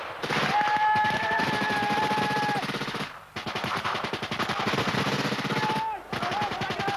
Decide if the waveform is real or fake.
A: real